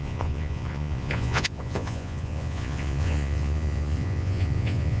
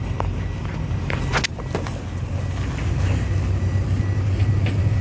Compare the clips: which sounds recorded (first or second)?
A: second